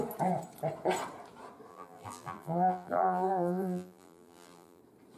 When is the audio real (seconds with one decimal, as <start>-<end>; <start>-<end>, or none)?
0.0-1.7; 4.8-5.2